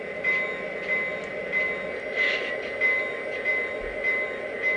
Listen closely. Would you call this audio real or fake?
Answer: real